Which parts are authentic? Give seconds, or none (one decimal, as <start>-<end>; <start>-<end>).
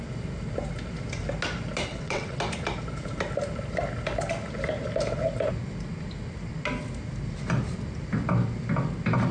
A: 0.0-1.9; 2.4-9.3